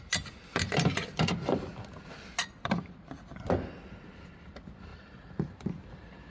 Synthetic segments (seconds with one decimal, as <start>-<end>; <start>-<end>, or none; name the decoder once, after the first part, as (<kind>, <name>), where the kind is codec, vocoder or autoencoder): 4.9-6.3 (vocoder, BigVGAN v2)